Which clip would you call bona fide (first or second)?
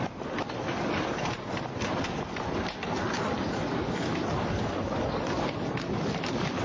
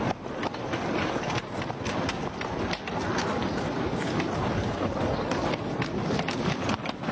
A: second